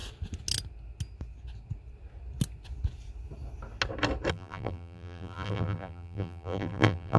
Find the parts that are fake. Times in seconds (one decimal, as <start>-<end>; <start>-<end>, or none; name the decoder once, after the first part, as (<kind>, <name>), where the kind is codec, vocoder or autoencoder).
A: 4.3-7.2 (vocoder, BigVGAN v2)